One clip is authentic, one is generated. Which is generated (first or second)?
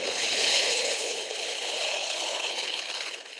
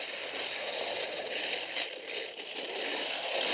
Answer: first